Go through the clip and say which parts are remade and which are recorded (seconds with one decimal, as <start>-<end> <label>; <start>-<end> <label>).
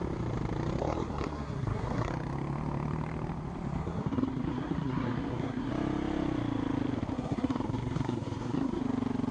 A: 0.0-0.8 recorded; 0.8-2.1 remade; 2.1-3.8 recorded; 3.8-5.7 remade; 5.7-7.1 recorded; 7.1-8.8 remade; 8.8-9.3 recorded